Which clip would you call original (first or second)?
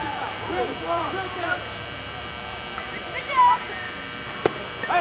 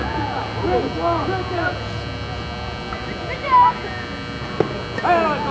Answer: second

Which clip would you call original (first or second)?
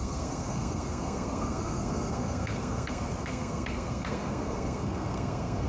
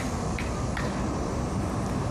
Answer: second